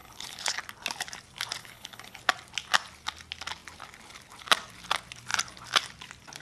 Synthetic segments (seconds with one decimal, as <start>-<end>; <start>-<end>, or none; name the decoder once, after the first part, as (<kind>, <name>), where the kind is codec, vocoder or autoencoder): 0.0-0.6 (codec, HILCodec); 1.6-2.2